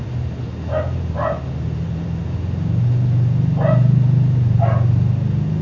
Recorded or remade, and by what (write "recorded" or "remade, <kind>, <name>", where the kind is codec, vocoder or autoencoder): recorded